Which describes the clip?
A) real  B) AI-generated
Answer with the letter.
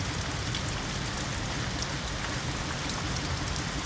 A